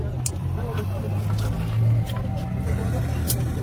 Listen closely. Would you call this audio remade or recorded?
recorded